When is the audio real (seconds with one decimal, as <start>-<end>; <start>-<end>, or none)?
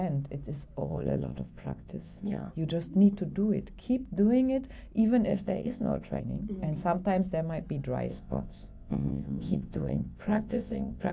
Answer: 0.0-0.8; 2.5-5.3; 6.2-8.1